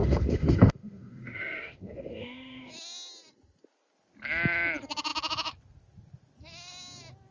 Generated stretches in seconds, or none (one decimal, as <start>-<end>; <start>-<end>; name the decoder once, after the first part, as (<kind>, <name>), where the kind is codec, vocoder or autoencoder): 0.0-2.7 (autoencoder, DAC-VAE)